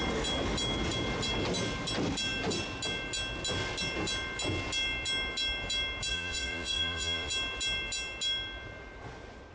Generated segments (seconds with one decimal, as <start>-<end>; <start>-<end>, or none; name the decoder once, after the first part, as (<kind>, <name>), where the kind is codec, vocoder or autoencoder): 6.1-7.3 (vocoder, Vocos)